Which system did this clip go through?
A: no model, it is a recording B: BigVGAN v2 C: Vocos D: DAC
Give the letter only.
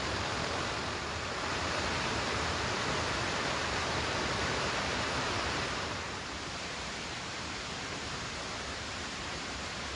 B